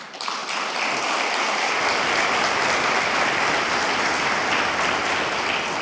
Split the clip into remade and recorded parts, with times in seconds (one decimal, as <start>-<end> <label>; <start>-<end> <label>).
0.0-5.8 recorded